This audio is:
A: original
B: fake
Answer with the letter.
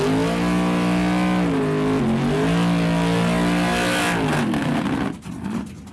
A